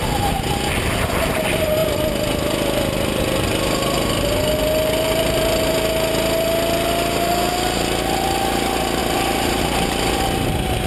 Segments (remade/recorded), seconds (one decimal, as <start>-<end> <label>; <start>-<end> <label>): 0.0-9.0 recorded; 9.0-9.6 remade; 9.6-10.9 recorded